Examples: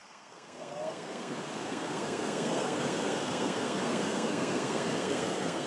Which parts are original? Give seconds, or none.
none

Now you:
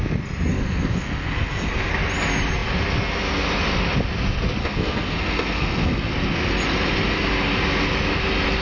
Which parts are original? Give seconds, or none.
0.0-0.5; 1.9-4.6; 6.1-8.6